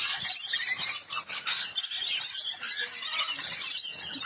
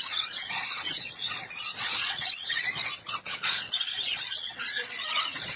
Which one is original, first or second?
first